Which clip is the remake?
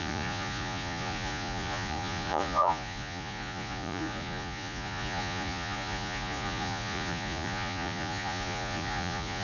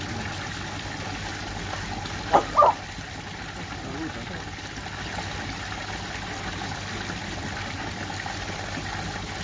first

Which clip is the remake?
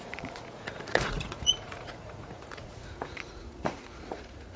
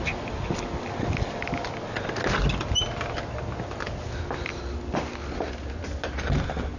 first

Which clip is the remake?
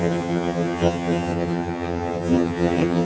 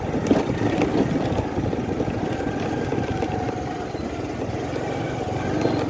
first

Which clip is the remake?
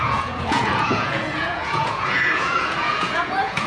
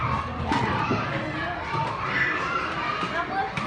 first